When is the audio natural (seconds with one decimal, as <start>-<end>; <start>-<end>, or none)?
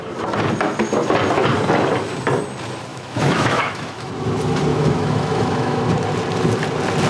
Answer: 0.0-2.9; 4.1-4.7; 5.8-7.1